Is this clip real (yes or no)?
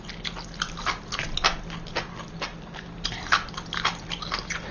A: yes